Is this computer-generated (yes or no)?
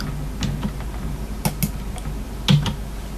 no